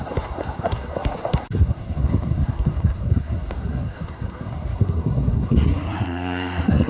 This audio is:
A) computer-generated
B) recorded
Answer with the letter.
A